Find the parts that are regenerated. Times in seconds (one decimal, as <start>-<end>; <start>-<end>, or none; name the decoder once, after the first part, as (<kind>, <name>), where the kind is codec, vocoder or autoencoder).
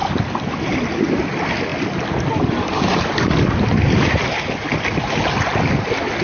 none